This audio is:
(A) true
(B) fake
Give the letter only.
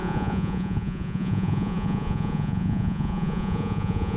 B